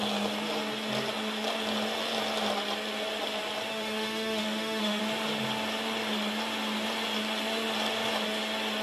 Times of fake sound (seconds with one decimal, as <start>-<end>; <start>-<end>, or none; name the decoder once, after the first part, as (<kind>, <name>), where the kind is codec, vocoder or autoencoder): 3.7-5.0 (autoencoder, DAC-VAE)